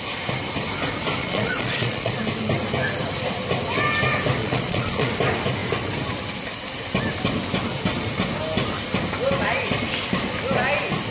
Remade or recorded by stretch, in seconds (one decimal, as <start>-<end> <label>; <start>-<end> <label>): 0.0-1.2 recorded; 1.2-2.2 remade; 2.2-4.4 recorded; 4.4-5.1 remade; 5.1-11.1 recorded